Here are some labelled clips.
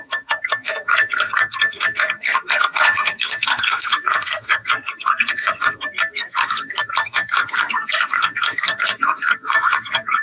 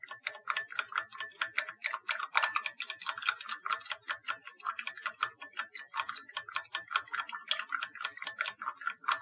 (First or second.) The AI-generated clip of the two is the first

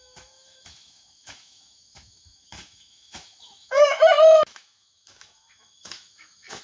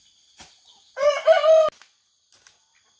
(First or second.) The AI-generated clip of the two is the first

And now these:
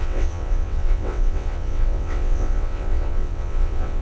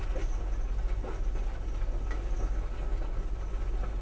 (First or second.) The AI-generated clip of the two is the first